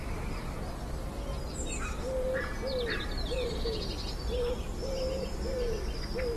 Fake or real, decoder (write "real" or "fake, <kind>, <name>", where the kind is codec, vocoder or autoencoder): real